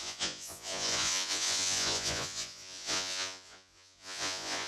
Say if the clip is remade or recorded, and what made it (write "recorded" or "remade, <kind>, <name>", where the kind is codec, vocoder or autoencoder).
remade, vocoder, Vocos